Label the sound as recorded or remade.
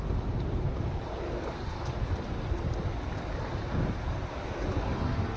recorded